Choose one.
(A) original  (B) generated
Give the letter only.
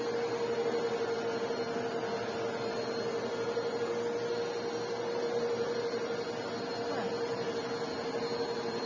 A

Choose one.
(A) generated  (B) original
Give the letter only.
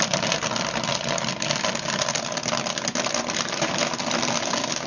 B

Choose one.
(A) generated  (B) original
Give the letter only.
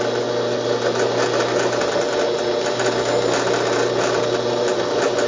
B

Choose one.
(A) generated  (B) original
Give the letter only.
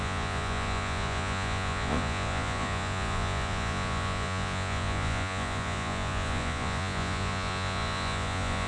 A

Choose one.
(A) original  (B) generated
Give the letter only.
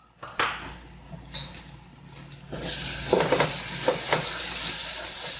A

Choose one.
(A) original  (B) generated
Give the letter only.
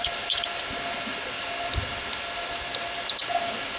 A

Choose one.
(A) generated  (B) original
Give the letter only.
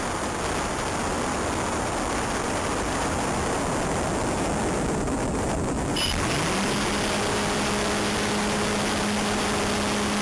B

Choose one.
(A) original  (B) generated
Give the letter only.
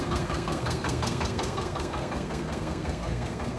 B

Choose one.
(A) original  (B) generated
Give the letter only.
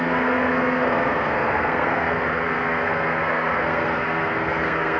B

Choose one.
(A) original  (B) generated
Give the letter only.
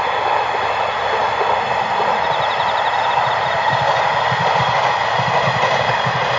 A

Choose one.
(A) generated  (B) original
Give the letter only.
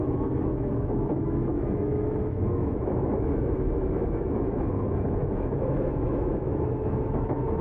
A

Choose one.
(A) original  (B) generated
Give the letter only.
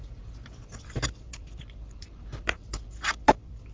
B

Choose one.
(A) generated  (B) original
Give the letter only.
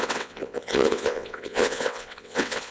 A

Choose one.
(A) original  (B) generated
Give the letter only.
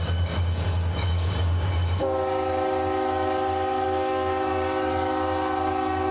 B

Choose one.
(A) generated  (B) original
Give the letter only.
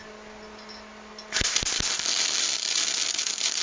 B